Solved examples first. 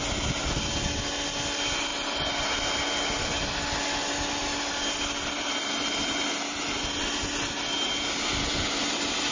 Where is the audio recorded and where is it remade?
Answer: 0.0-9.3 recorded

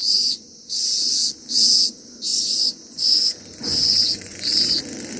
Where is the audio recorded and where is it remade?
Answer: 0.0-0.8 remade; 0.8-2.3 recorded; 2.3-4.8 remade; 4.8-5.2 recorded

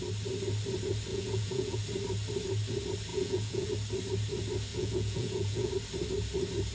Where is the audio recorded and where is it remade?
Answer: 0.0-1.1 recorded; 1.1-1.8 remade; 1.8-3.1 recorded; 3.1-3.7 remade; 3.7-4.7 recorded; 4.7-5.7 remade; 5.7-6.7 recorded

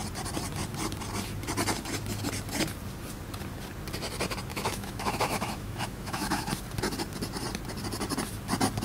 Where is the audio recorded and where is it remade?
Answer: 0.0-4.5 recorded; 4.5-6.5 remade; 6.5-8.8 recorded

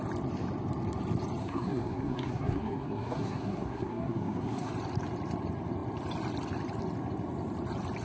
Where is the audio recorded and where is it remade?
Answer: 0.0-1.4 recorded; 1.4-4.7 remade; 4.7-8.0 recorded

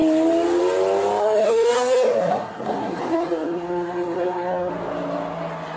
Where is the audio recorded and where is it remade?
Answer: 0.0-1.2 recorded; 1.2-4.7 remade; 4.7-5.8 recorded